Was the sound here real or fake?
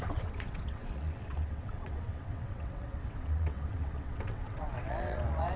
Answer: fake